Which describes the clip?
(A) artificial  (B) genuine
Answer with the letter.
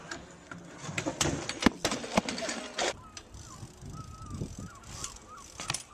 B